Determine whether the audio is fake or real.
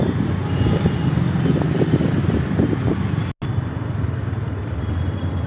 real